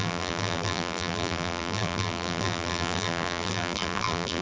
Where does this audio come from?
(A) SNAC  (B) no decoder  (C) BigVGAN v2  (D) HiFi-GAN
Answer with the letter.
C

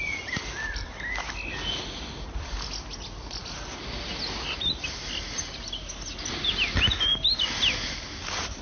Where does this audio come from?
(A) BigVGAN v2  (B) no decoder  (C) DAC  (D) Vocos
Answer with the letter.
B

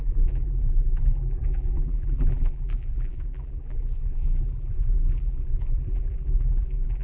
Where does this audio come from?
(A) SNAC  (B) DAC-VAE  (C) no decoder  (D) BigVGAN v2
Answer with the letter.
D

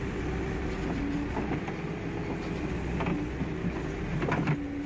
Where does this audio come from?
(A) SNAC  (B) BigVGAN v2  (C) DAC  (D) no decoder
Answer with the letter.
D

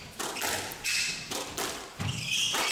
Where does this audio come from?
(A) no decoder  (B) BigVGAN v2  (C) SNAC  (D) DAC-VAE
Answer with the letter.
B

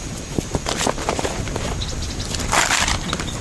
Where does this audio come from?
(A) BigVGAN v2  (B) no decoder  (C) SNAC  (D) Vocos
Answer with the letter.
A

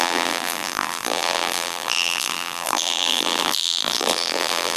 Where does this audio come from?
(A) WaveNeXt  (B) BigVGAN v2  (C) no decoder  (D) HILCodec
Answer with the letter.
B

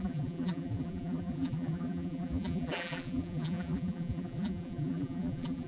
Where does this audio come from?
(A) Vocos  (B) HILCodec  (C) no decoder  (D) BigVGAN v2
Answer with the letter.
D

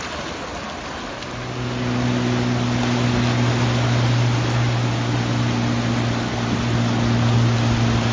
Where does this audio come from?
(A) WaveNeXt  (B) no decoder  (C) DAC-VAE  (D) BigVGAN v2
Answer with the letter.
B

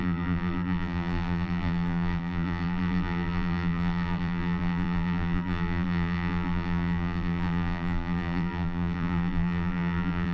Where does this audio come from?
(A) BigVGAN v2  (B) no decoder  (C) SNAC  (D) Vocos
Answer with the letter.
A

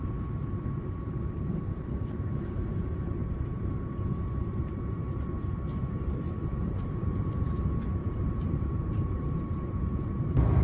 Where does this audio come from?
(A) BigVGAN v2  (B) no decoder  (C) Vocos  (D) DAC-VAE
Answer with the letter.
A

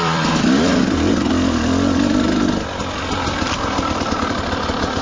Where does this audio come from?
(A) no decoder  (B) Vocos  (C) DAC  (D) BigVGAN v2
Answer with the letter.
D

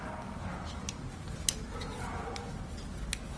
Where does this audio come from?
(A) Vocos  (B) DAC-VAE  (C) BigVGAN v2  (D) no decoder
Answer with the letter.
D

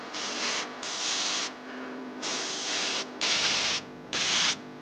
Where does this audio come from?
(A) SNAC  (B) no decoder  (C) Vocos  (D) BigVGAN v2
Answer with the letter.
B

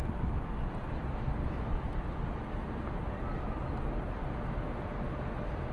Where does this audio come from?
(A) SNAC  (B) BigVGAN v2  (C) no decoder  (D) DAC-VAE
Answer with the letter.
C